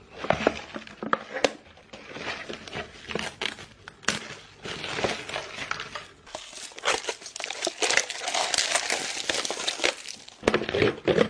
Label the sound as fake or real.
real